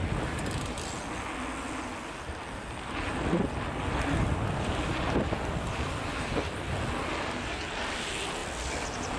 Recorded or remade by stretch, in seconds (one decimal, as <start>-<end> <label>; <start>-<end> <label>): 0.0-9.2 recorded